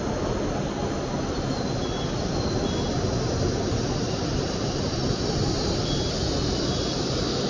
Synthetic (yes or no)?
no